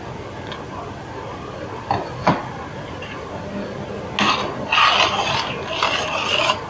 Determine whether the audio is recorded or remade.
recorded